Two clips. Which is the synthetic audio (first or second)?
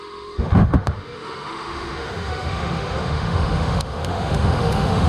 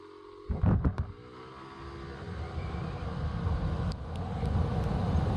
first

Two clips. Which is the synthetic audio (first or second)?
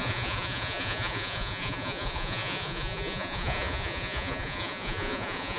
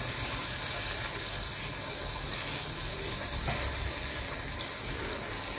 first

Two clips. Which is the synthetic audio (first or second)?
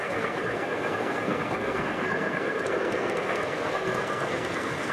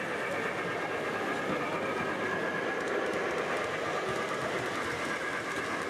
first